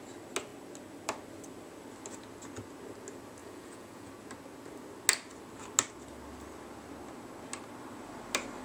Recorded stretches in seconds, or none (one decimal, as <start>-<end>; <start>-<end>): 0.0-3.4; 4.1-8.6